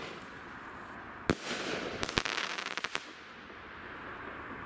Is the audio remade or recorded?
recorded